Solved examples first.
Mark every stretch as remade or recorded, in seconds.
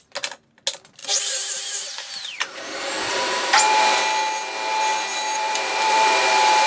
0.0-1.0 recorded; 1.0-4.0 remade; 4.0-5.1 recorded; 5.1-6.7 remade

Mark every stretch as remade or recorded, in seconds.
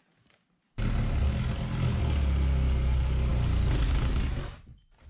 0.0-5.1 recorded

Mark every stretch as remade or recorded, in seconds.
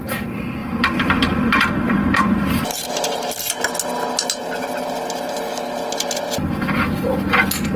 0.0-0.6 recorded; 0.6-2.9 remade; 2.9-7.8 recorded